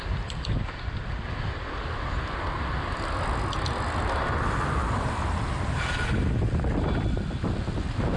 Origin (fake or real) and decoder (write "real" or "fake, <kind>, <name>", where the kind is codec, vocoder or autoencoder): real